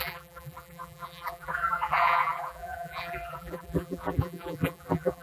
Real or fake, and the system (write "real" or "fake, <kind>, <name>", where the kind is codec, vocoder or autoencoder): fake, vocoder, BigVGAN v2